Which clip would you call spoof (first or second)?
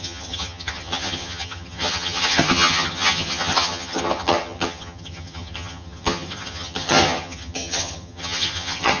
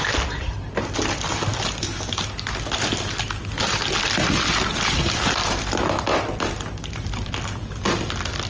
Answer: first